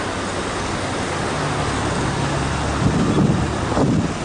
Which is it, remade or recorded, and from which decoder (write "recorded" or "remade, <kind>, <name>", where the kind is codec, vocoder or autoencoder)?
recorded